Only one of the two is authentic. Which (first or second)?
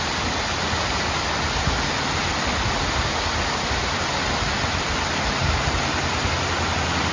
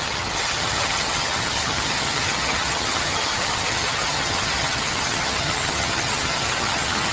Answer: first